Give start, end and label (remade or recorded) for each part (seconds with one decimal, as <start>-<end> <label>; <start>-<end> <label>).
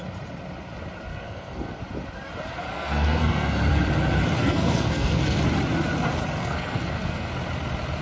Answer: 0.0-1.1 recorded; 1.1-1.8 remade; 1.8-2.7 recorded; 2.7-3.7 remade; 3.7-4.4 recorded; 4.4-5.4 remade; 5.4-6.4 recorded; 6.4-7.3 remade; 7.3-8.0 recorded